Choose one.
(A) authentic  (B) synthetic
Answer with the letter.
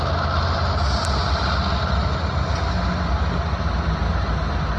A